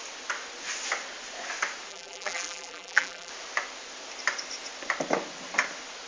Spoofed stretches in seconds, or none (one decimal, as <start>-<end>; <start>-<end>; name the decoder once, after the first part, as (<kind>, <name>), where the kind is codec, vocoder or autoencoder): 1.9-3.3 (vocoder, BigVGAN v2)